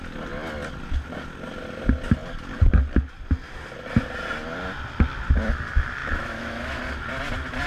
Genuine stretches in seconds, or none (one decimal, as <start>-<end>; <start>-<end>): 0.0-6.0; 6.8-7.7